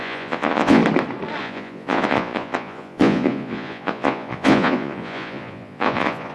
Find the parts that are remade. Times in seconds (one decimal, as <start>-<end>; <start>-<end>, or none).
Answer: 0.0-0.8; 1.4-6.3